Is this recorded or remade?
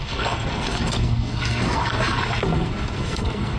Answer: remade